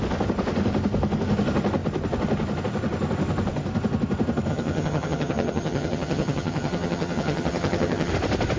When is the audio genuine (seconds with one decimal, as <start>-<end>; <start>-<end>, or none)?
0.0-4.5; 8.1-8.6